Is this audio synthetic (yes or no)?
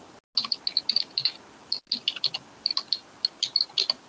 no